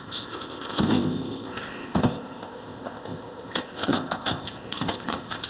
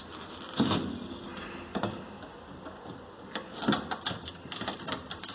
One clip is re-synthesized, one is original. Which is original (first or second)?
second